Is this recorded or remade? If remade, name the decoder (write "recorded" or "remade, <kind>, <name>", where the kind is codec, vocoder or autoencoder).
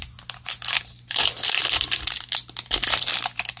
recorded